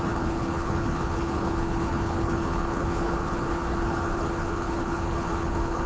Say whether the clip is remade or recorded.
remade